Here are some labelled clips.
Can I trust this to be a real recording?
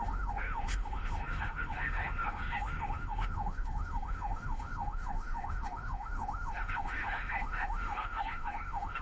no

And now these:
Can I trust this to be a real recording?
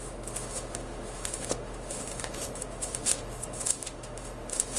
no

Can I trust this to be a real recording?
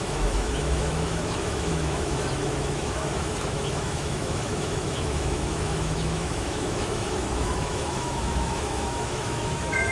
no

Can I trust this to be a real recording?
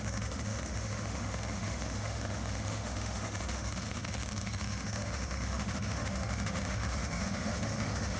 no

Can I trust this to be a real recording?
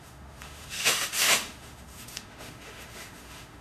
no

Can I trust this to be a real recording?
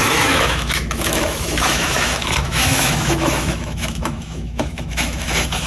no